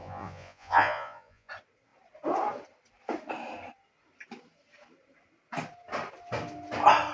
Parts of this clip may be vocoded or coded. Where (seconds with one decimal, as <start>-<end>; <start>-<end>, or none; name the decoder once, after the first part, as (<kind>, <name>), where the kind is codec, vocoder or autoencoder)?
0.0-1.5 (vocoder, Vocos)